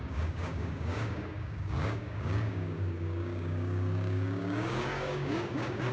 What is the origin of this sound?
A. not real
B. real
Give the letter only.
A